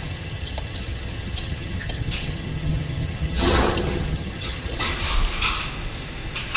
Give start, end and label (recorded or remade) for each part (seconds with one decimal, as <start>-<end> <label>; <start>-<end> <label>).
0.0-4.9 remade; 4.9-6.6 recorded